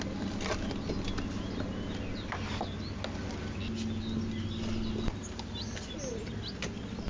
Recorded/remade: recorded